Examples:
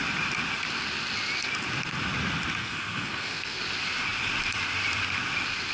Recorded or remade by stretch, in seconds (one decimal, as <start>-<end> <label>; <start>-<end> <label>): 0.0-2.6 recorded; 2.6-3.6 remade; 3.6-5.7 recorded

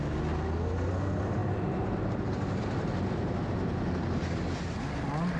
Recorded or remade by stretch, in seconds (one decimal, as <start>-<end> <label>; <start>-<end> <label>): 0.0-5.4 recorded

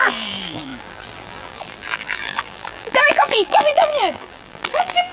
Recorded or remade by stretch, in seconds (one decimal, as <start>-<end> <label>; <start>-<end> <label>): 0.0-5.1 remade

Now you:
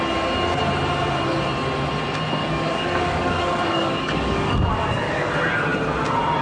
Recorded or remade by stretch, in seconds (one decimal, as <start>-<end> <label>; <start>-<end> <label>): 0.0-2.4 recorded; 2.4-5.3 remade; 5.3-6.4 recorded